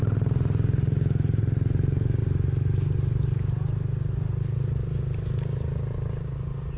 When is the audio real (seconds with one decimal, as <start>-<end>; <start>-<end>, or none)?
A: 0.0-6.8